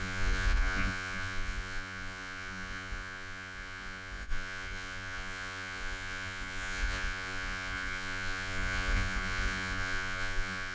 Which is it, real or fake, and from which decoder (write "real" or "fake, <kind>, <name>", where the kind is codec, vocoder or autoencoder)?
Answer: fake, vocoder, Vocos